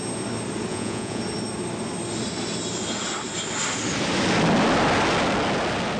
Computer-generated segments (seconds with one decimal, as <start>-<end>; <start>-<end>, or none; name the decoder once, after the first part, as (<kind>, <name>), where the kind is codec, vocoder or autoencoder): 0.7-1.2 (vocoder, Vocos)